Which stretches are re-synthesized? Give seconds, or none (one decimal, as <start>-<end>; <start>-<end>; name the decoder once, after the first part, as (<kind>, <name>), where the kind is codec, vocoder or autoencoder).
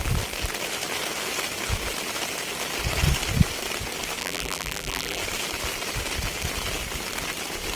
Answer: 4.2-5.2 (vocoder, BigVGAN v2)